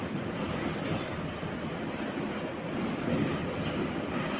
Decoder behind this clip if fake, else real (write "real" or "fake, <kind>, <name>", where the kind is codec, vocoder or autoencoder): real